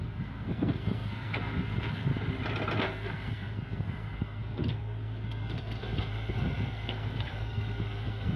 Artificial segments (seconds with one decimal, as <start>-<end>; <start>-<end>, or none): 0.0-2.1; 2.8-8.4